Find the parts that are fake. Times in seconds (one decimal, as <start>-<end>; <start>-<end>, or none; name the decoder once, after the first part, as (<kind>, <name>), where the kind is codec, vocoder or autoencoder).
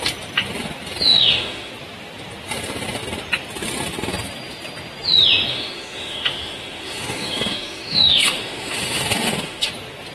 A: 1.1-1.7 (autoencoder, DAC-VAE); 5.5-9.7